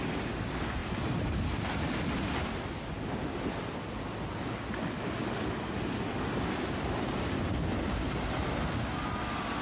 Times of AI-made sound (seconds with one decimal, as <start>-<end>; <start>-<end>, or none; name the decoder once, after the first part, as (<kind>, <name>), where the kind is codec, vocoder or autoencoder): none